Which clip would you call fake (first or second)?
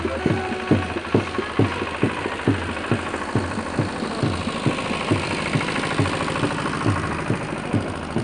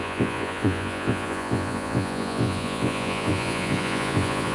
second